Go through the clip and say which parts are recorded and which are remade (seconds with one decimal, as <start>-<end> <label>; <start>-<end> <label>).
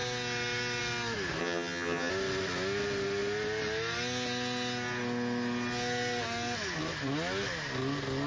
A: 0.0-1.4 recorded; 1.4-2.1 remade; 2.1-8.3 recorded